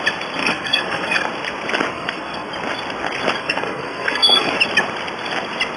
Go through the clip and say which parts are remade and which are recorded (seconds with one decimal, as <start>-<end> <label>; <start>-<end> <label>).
0.0-0.4 recorded; 0.4-1.2 remade; 1.2-1.9 recorded; 1.9-2.5 remade; 2.5-3.4 recorded; 3.4-4.5 remade; 4.5-5.8 recorded